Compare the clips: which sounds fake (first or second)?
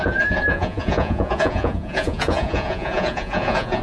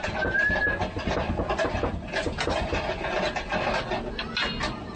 first